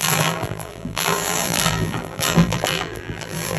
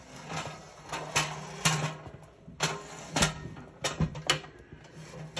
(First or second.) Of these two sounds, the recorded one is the second